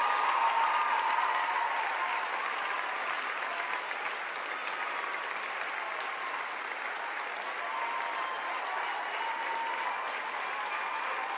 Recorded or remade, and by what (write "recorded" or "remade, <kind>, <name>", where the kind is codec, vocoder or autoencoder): recorded